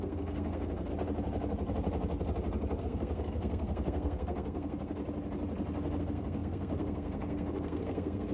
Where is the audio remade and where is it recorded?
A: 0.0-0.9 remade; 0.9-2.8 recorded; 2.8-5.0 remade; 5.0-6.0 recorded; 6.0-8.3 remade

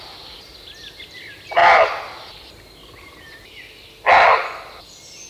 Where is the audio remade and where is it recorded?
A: 0.0-5.3 recorded

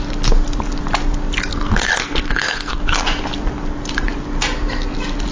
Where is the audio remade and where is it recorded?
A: 0.0-1.5 recorded; 1.5-2.8 remade; 2.8-5.3 recorded

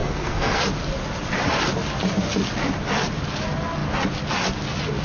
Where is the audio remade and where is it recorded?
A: 0.0-0.6 remade; 0.6-5.0 recorded